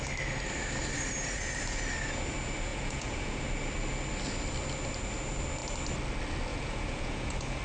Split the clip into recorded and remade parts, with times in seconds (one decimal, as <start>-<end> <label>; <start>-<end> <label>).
0.0-2.7 recorded; 2.7-3.4 remade; 3.4-6.5 recorded; 6.5-7.6 remade